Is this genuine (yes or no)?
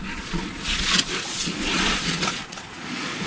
no